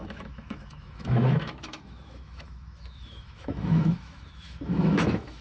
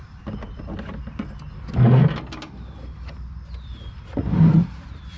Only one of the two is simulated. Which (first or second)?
first